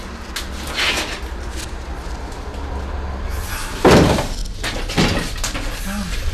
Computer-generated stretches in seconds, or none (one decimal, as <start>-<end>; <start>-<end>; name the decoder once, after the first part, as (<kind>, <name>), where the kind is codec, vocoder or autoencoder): none